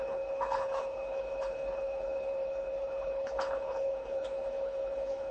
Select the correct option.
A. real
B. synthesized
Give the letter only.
B